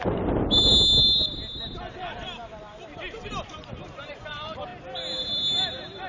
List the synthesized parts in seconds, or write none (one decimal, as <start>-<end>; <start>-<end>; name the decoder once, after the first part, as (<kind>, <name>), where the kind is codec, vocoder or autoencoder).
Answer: 0.0-0.7 (vocoder, BigVGAN v2); 3.8-4.7